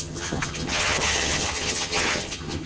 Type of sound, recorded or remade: remade